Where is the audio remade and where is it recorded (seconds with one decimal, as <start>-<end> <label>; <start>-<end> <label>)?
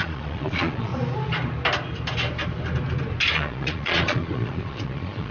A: 0.0-0.9 remade; 0.9-3.3 recorded; 3.3-5.3 remade